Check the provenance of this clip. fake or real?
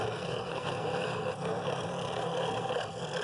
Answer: fake